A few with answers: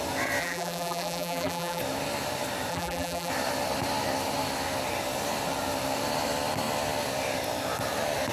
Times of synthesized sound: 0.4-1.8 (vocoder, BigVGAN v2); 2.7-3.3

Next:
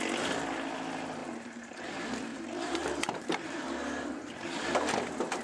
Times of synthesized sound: 1.2-1.8 (vocoder, BigVGAN v2); 2.3-3.6

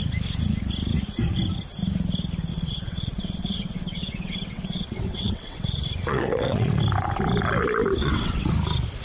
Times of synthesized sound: 2.5-6.7 (vocoder, WaveNeXt); 8.0-8.5

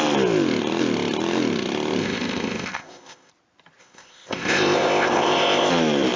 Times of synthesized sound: 2.0-3.3 (codec, ZipCodec); 3.8-5.7

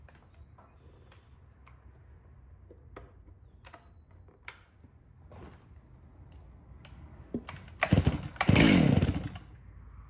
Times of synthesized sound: none

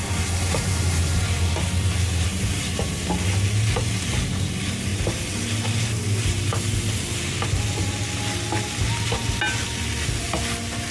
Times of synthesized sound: 0.4-1.0 (vocoder, BigVGAN v2); 2.3-3.1